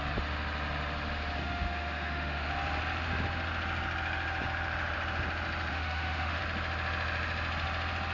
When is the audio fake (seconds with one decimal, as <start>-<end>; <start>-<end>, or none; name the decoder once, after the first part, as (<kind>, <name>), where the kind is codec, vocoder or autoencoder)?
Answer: 1.4-2.5 (autoencoder, DAC-VAE); 5.7-6.4